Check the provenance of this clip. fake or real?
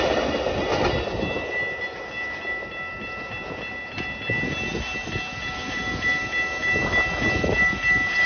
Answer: real